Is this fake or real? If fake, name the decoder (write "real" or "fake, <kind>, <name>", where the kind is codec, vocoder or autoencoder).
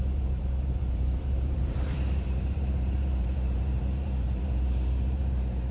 fake, vocoder, BigVGAN v2